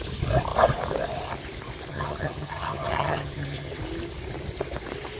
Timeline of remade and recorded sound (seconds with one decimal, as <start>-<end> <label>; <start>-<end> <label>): 0.0-1.9 recorded; 1.9-3.8 remade; 3.8-5.2 recorded